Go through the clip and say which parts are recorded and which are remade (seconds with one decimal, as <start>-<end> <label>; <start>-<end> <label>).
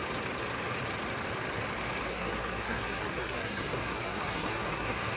0.0-2.1 recorded; 2.1-5.2 remade